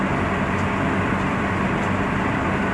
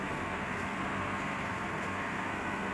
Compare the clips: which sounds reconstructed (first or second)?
second